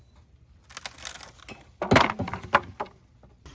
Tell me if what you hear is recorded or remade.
recorded